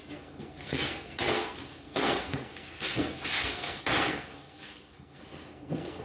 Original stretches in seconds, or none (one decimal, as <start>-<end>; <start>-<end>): none